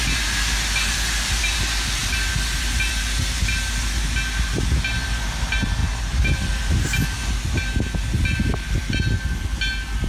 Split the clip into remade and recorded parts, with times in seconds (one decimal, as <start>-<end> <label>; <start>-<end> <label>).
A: 0.0-10.1 recorded